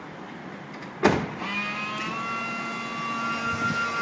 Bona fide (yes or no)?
yes